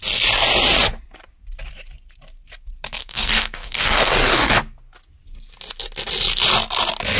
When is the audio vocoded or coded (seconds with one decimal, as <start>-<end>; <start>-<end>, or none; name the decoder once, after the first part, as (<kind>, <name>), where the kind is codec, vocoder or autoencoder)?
3.0-4.1 (codec, SNAC)